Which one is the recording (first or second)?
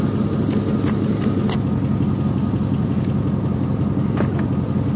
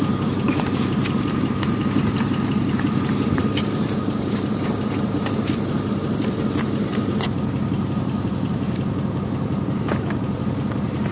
first